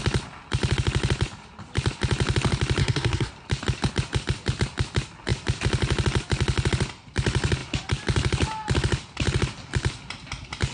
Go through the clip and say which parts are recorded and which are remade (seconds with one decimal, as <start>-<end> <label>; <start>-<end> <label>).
0.0-2.8 recorded; 2.8-3.3 remade; 3.3-10.7 recorded